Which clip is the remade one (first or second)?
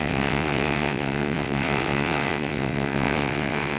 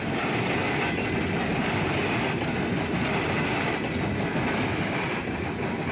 first